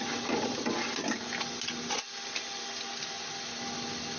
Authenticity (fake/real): real